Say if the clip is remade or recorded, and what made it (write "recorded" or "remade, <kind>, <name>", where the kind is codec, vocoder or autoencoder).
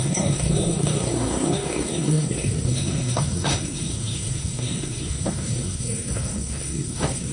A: remade, codec, SNAC